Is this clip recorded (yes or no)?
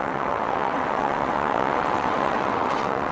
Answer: no